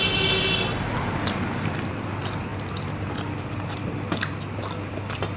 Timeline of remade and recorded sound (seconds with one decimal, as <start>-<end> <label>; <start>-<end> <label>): 0.0-5.4 recorded